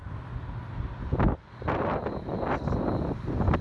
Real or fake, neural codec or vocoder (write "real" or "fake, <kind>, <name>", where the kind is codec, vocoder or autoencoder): real